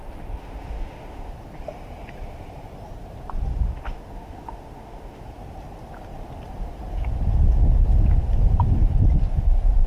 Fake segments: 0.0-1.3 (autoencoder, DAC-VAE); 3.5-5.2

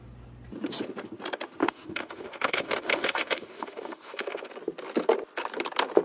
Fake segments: 1.6-4.5 (autoencoder, DAC-VAE)

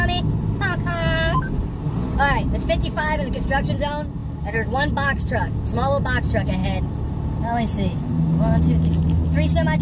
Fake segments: none